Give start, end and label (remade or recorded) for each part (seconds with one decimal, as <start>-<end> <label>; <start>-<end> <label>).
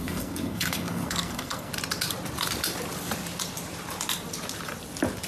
0.0-1.7 remade; 1.7-5.3 recorded